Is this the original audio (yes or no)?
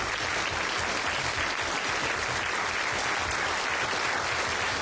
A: yes